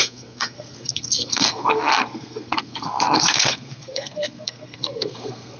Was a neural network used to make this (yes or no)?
yes